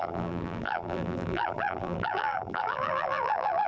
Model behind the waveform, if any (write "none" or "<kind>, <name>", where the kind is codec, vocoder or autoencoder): vocoder, BigVGAN v2